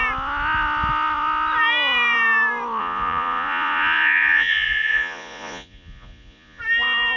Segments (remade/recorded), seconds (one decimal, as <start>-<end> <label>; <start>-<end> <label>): 0.0-2.8 recorded; 2.8-6.6 remade; 6.6-7.2 recorded